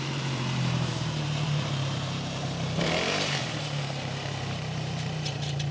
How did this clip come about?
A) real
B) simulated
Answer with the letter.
B